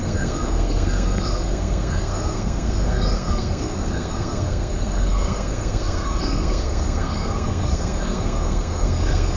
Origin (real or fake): fake